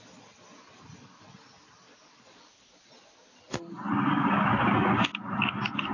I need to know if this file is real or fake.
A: real